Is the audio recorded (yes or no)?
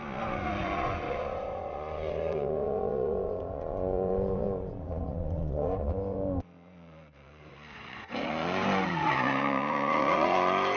no